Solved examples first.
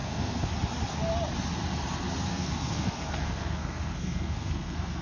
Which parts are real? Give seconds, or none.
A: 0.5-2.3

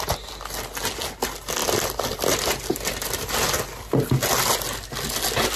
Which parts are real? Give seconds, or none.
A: 0.0-5.6

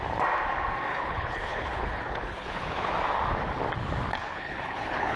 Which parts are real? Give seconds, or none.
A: 0.0-0.9; 2.9-4.2

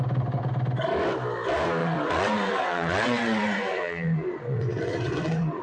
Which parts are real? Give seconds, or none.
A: 0.0-1.8

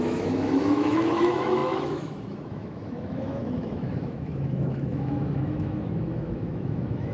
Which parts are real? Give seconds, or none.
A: none